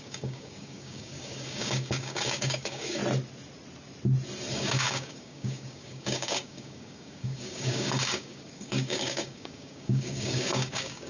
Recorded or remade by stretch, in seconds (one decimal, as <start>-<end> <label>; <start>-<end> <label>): 0.0-3.0 remade; 3.0-4.5 recorded; 4.5-11.1 remade